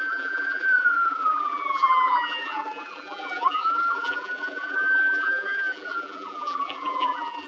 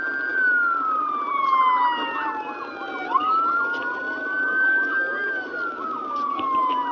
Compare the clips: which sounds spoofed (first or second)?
first